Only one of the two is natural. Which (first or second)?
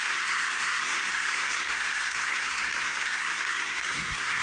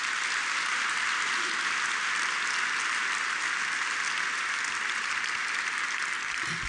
second